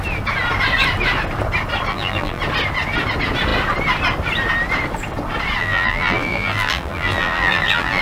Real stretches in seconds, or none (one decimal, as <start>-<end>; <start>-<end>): 0.0-1.9; 2.4-5.6